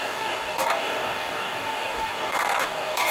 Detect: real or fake fake